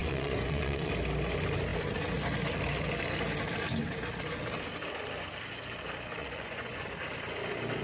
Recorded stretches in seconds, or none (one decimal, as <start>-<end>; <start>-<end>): 0.9-6.2; 6.8-7.8